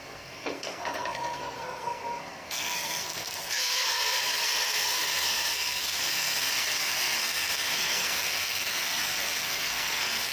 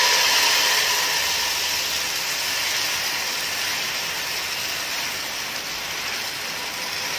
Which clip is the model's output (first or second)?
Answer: first